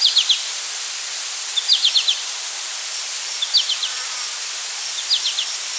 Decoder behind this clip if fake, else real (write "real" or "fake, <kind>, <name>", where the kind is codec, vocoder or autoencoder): real